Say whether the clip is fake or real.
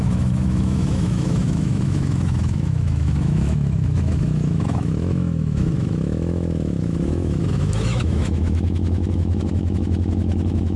fake